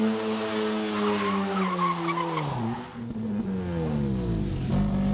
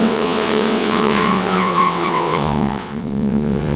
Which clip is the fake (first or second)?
second